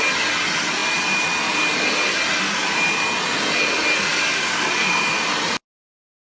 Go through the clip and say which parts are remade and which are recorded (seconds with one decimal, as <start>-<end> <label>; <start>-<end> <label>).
0.0-4.1 recorded; 4.1-5.1 remade; 5.1-6.2 recorded